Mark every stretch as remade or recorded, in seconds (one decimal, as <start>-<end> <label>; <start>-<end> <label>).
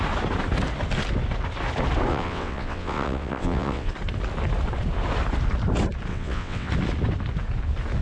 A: 0.0-2.1 recorded; 2.1-3.9 remade; 3.9-6.1 recorded; 6.1-6.7 remade; 6.7-8.0 recorded